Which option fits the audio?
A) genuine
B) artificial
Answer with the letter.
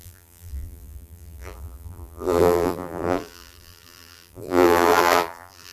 B